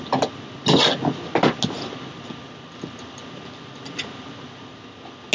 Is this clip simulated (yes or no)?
no